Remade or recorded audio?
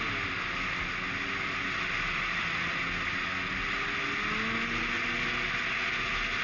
recorded